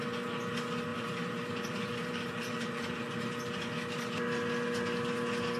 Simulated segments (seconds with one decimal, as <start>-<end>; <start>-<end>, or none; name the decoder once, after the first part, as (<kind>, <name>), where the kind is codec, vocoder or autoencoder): 0.9-3.0 (vocoder, BigVGAN v2)